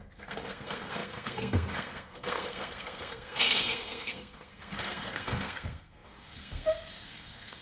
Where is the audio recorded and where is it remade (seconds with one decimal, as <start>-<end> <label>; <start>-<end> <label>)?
0.0-7.6 remade